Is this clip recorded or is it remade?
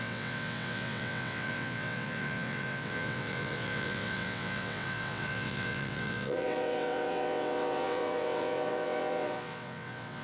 remade